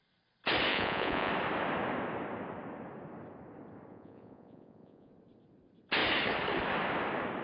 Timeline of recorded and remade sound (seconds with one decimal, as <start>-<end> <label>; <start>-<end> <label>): 0.0-0.7 recorded; 0.7-1.3 remade; 1.3-3.9 recorded; 3.9-5.1 remade; 5.1-7.4 recorded